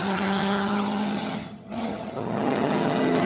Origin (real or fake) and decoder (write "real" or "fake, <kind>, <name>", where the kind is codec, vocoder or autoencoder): fake, vocoder, HiFi-GAN